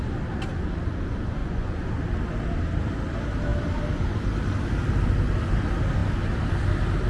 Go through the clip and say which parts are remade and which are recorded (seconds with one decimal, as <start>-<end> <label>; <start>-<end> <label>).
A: 0.0-1.4 recorded; 1.4-1.9 remade; 1.9-7.1 recorded